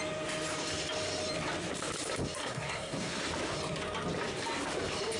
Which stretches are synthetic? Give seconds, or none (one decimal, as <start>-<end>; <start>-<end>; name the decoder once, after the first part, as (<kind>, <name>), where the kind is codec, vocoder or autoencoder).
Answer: 2.4-3.2 (codec, SNAC)